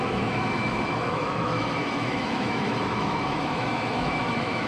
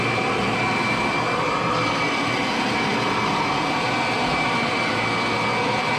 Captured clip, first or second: second